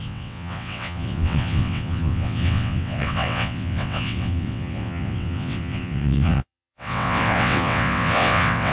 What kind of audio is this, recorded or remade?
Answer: remade